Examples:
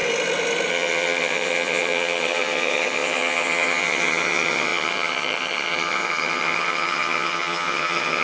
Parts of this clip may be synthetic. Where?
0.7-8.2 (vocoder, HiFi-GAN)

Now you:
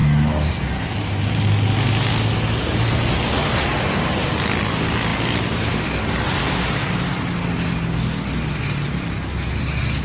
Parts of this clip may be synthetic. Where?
none

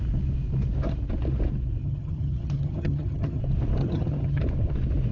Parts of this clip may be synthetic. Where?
1.8-3.4 (vocoder, HiFi-GAN); 3.8-4.4

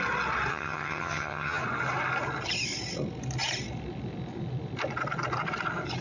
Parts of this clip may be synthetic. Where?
0.5-1.6 (vocoder, HiFi-GAN)

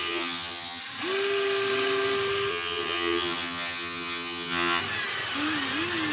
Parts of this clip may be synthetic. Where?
0.0-0.8 (vocoder, HiFi-GAN); 2.5-4.8

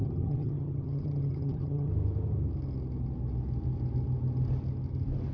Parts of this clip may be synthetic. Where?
0.0-1.9 (vocoder, HiFi-GAN)

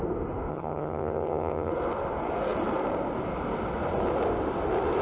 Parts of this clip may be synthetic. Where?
0.5-1.7 (vocoder, HiFi-GAN)